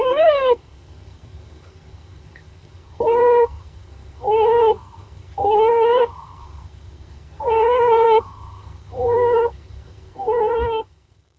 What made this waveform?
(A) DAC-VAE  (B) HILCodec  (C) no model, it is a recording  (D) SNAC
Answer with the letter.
D